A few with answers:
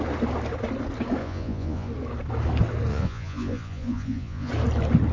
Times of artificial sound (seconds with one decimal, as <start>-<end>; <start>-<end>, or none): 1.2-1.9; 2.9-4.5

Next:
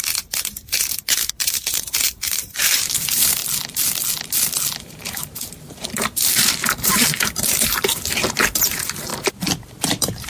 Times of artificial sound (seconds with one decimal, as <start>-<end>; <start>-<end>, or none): 0.0-3.4; 4.8-9.1; 9.7-10.3

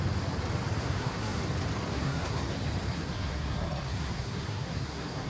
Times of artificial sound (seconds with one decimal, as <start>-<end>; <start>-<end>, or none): 0.8-1.4; 1.9-2.4; 2.9-5.3

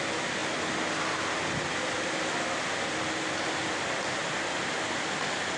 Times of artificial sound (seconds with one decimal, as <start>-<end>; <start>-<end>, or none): none

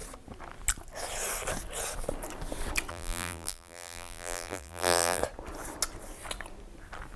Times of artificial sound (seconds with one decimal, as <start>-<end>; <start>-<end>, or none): 2.9-5.2

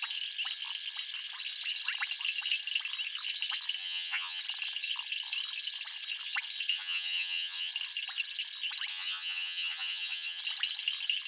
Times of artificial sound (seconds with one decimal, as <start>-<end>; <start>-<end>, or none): 3.8-4.4; 6.7-7.7; 8.9-10.4

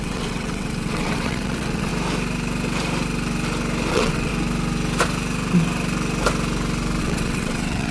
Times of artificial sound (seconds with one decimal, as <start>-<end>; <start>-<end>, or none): 0.0-1.9; 3.9-4.3; 7.0-7.9

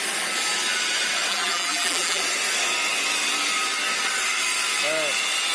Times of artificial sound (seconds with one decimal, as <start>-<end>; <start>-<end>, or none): 1.3-2.2